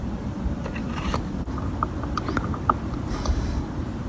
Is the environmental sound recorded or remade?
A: recorded